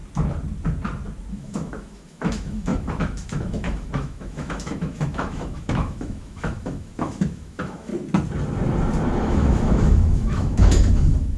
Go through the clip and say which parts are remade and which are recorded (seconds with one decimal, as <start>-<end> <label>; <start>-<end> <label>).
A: 0.0-1.3 recorded; 1.3-7.9 remade; 7.9-9.2 recorded; 9.2-11.4 remade